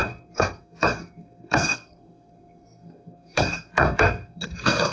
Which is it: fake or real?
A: fake